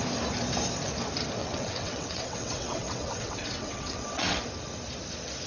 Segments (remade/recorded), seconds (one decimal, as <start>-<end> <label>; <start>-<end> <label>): 0.0-1.4 recorded; 1.4-4.4 remade; 4.4-5.5 recorded

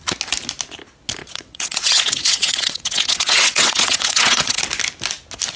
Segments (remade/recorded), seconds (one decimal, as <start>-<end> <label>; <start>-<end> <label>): 0.0-1.2 recorded; 1.2-4.6 remade; 4.6-5.6 recorded

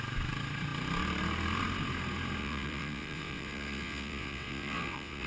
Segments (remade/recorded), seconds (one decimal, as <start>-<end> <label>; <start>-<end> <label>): 0.0-2.4 recorded; 2.4-5.3 remade

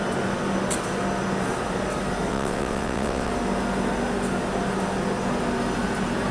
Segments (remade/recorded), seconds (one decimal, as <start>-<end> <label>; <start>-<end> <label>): 0.0-2.3 recorded; 2.3-3.3 remade; 3.3-6.3 recorded